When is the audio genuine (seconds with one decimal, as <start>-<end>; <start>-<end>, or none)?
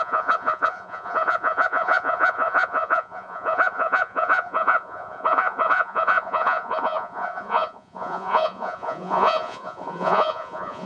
none